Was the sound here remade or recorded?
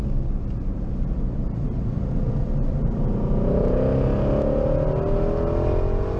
recorded